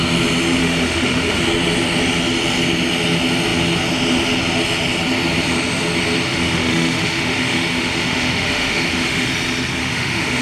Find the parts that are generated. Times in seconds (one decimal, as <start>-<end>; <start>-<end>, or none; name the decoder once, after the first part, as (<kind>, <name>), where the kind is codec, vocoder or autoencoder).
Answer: 0.6-1.4 (autoencoder, DAC-VAE); 6.3-9.3; 9.8-10.4